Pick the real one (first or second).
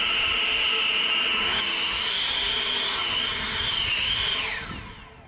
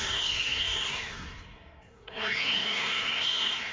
first